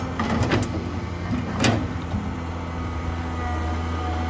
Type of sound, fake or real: real